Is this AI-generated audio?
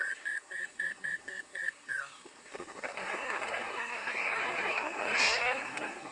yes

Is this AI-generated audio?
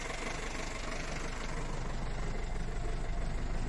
no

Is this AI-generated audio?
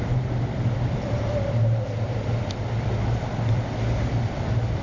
yes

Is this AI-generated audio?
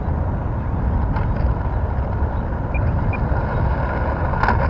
no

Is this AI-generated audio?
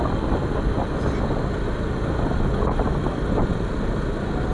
no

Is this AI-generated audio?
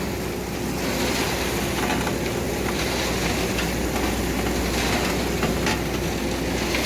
no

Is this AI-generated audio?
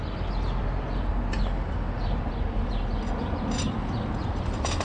no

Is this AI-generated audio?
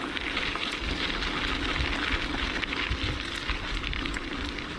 no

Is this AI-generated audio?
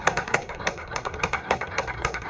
yes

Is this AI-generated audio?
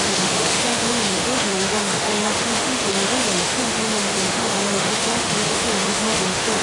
yes